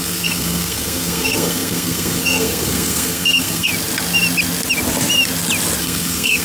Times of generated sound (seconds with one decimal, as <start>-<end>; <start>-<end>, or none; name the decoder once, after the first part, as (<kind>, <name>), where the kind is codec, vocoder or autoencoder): 0.0-3.7 (codec, SNAC); 5.8-6.4